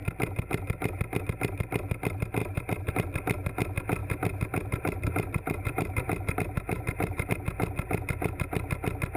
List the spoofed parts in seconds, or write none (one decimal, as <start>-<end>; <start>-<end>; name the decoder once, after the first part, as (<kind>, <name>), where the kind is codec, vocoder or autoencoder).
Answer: 2.4-2.9 (vocoder, BigVGAN v2); 4.0-7.3

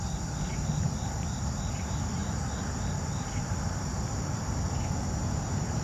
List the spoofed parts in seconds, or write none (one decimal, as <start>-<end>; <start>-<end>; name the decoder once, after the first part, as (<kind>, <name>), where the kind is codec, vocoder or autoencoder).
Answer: none

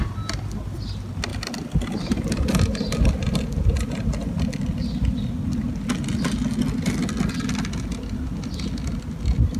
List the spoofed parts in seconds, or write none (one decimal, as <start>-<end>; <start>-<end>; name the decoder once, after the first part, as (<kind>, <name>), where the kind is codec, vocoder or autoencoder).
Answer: none

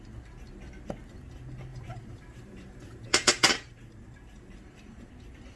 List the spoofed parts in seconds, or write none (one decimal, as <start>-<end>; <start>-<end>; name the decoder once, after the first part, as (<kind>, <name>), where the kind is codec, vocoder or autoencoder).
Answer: 1.7-5.1 (vocoder, BigVGAN v2)